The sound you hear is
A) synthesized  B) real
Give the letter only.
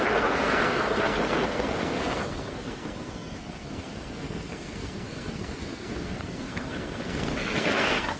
A